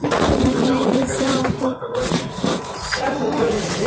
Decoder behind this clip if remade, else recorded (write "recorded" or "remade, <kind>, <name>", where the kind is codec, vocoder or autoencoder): remade, vocoder, Vocos